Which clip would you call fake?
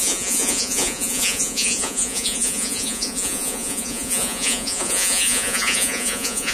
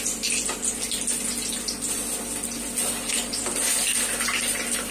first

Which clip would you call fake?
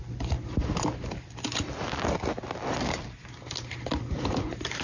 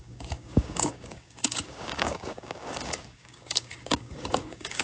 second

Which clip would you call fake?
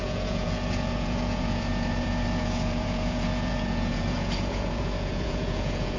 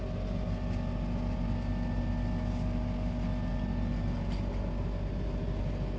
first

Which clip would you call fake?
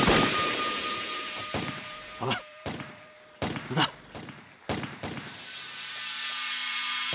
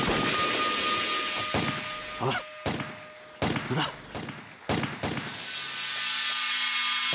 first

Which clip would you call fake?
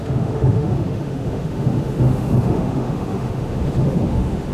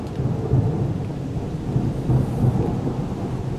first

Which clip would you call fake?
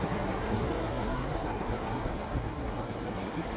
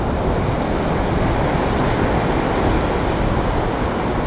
first